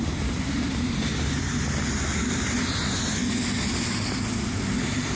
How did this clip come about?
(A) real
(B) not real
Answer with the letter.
A